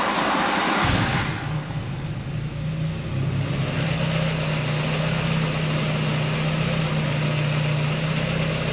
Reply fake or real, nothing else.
real